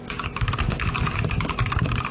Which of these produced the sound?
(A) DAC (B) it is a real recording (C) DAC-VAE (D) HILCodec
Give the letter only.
A